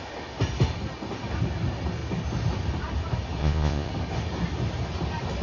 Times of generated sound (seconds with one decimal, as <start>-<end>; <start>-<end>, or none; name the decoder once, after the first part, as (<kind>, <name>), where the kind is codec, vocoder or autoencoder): 3.4-3.9 (vocoder, Vocos)